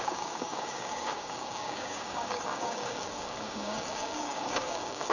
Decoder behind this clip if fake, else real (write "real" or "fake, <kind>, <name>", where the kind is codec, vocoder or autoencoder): fake, codec, DAC